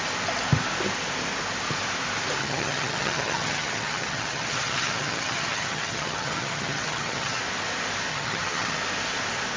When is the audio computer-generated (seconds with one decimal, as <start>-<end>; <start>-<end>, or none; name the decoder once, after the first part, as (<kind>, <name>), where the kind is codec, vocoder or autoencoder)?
2.4-7.4 (vocoder, HiFi-GAN); 8.1-8.8